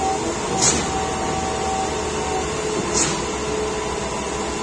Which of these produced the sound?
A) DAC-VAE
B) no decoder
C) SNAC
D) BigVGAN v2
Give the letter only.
B